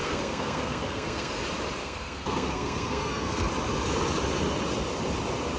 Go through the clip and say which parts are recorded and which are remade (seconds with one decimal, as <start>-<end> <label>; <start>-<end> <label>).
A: 0.0-1.3 remade; 1.3-1.8 recorded; 1.8-3.5 remade; 3.5-5.6 recorded